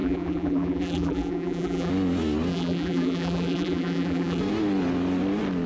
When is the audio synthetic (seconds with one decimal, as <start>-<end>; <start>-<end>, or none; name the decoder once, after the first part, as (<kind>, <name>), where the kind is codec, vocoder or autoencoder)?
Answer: 0.0-1.9 (vocoder, BigVGAN v2); 2.5-4.4